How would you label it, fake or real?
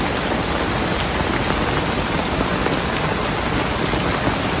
real